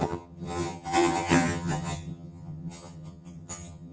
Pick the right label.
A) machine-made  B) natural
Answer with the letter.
A